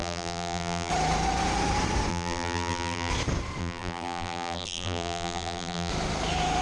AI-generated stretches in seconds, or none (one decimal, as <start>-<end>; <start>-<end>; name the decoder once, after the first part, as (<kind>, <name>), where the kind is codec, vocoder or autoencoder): 0.0-0.9 (vocoder, BigVGAN v2); 2.1-3.1; 3.6-5.9